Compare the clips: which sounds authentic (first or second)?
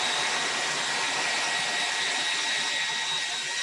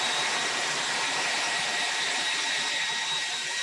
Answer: first